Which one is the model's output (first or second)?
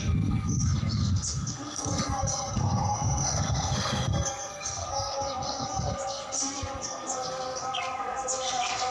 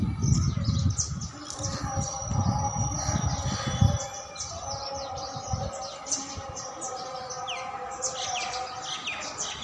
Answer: first